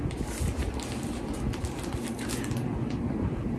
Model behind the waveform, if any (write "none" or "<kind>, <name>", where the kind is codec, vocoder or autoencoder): none